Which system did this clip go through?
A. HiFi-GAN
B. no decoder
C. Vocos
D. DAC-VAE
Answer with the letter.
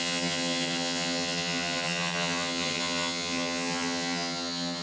A